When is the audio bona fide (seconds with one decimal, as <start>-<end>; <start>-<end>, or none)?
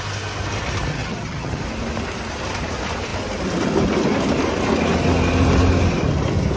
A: 0.0-0.9; 1.6-6.6